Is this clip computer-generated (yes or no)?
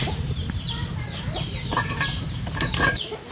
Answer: yes